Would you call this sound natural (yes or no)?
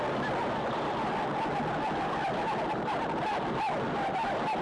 yes